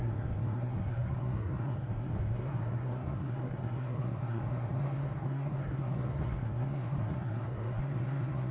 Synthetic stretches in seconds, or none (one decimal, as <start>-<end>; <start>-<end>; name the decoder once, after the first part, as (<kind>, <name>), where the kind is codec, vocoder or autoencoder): 0.0-8.5 (codec, SNAC)